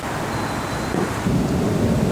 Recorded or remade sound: recorded